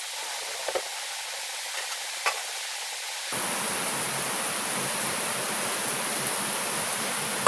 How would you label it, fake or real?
real